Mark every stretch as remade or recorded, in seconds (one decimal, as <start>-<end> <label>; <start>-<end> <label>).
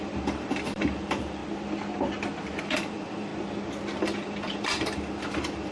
0.0-1.4 remade; 1.4-2.6 recorded; 2.6-3.3 remade; 3.3-4.0 recorded; 4.0-5.7 remade